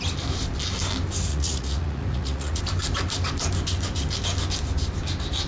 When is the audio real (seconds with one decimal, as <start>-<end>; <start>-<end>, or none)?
0.0-1.3; 2.6-5.5